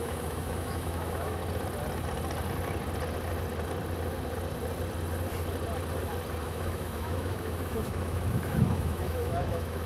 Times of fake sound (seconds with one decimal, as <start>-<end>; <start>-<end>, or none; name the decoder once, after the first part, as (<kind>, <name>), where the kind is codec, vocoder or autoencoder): 0.0-1.4 (autoencoder, DAC-VAE); 6.4-9.9